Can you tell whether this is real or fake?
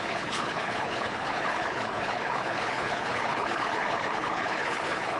fake